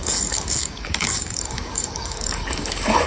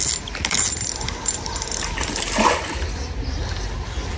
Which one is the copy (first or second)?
first